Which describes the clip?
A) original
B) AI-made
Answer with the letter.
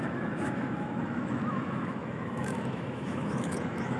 B